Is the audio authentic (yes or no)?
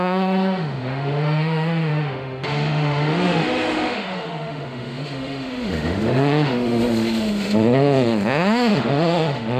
no